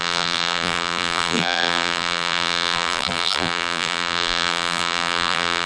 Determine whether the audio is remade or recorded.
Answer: remade